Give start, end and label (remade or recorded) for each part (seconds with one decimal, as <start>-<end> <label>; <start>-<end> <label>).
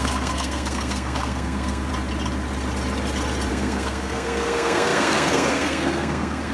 0.0-1.9 remade; 1.9-3.5 recorded; 3.5-6.5 remade